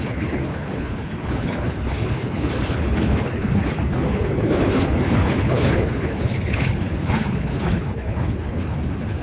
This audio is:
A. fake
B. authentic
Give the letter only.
A